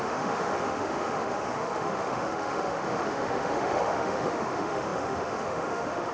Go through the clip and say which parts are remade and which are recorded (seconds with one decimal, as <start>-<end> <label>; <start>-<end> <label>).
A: 0.0-6.1 remade